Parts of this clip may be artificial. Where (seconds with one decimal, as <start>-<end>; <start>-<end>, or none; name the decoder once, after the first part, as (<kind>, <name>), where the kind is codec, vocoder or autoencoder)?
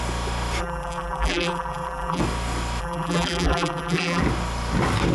0.6-2.2 (vocoder, BigVGAN v2); 2.8-4.2